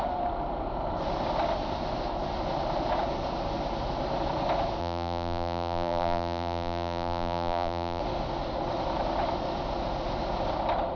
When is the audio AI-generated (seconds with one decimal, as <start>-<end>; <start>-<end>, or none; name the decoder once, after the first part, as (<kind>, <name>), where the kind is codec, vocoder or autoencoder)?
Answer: 4.8-8.0 (vocoder, BigVGAN v2)